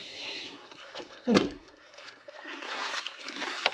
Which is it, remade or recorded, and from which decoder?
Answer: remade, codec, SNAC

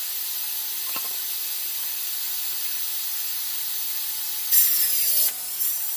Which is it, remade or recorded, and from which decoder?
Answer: recorded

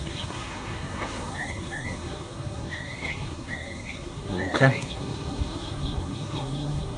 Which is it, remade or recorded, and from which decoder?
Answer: remade, codec, SNAC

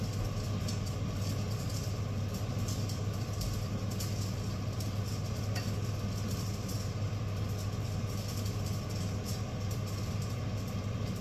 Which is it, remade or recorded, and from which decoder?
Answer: recorded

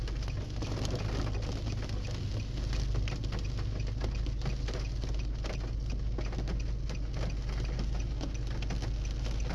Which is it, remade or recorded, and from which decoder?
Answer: recorded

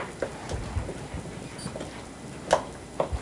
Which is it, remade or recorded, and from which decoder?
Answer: recorded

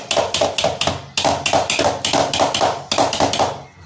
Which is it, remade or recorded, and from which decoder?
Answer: recorded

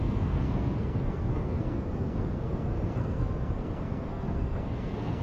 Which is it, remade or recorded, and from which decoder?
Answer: remade, codec, SNAC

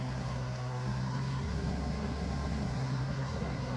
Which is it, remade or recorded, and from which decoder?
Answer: remade, codec, SNAC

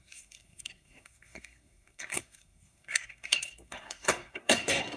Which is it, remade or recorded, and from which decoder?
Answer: remade, codec, SNAC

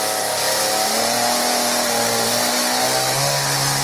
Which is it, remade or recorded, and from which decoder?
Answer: recorded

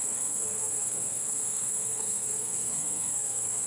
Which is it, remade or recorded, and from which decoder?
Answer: remade, codec, SNAC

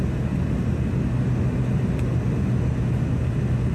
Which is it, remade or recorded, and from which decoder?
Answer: recorded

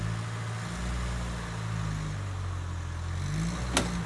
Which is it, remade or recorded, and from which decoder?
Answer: recorded